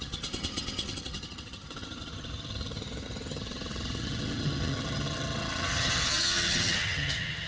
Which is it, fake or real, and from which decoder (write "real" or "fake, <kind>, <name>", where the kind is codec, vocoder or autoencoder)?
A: fake, vocoder, HiFi-GAN